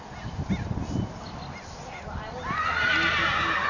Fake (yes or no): no